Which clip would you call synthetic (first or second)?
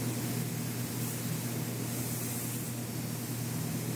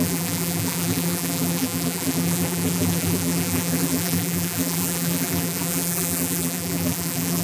second